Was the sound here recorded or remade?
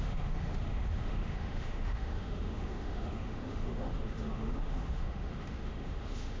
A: remade